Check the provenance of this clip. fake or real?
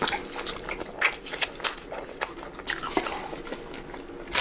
real